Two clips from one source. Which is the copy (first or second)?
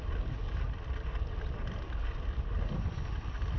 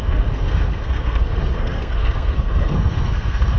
second